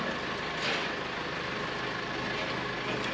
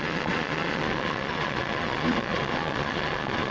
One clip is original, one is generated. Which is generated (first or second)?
second